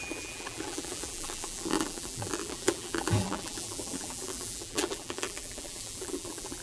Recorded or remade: remade